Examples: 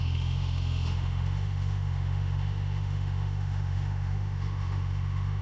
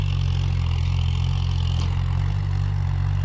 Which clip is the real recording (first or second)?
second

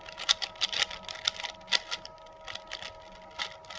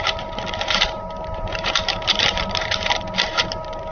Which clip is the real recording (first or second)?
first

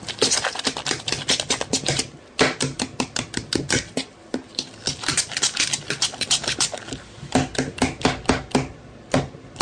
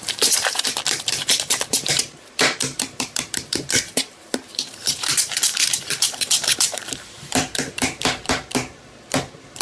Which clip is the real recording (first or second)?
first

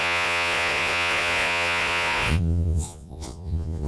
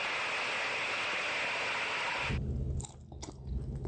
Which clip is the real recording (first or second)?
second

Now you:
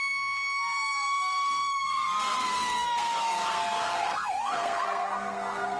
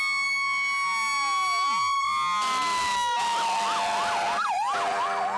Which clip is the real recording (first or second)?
second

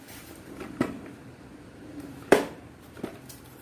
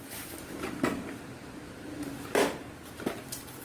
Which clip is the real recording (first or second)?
second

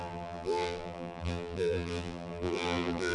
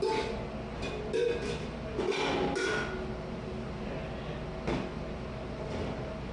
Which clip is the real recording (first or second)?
second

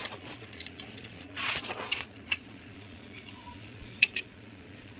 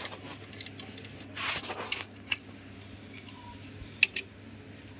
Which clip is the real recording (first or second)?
second